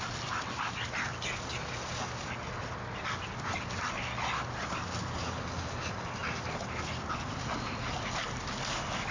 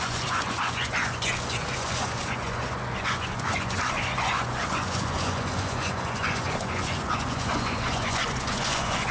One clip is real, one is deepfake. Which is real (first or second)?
first